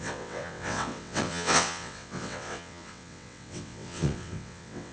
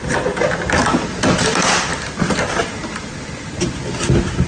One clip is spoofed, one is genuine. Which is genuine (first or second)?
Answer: second